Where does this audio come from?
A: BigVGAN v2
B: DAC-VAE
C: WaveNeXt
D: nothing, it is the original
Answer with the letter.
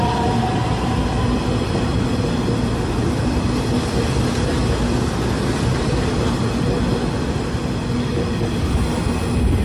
D